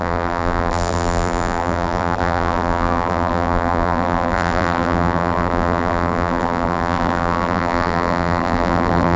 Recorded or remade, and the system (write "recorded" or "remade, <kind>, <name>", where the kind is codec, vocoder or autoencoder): remade, vocoder, BigVGAN v2